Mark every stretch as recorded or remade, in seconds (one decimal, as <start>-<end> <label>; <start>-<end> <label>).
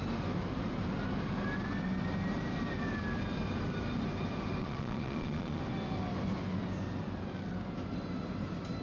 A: 0.0-4.6 recorded; 4.6-5.6 remade; 5.6-8.8 recorded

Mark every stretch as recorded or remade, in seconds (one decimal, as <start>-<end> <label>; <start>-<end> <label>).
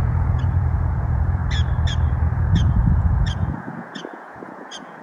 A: 0.0-1.4 remade; 1.4-2.4 recorded; 2.4-5.0 remade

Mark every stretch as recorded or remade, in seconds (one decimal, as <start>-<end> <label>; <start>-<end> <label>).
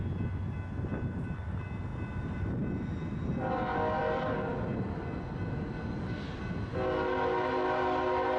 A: 0.0-8.4 recorded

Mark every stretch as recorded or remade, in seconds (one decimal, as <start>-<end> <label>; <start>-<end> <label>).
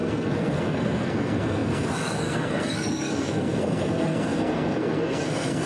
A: 0.0-5.7 remade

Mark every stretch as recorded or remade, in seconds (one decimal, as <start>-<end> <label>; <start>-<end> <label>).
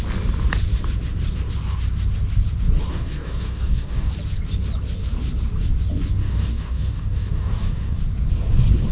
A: 0.0-2.9 recorded; 2.9-4.1 remade; 4.1-6.2 recorded; 6.2-8.0 remade; 8.0-8.9 recorded